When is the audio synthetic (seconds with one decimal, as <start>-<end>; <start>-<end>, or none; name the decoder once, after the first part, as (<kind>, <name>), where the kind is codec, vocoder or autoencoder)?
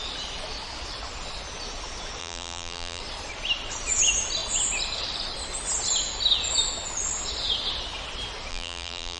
2.2-3.0 (vocoder, BigVGAN v2); 8.5-9.2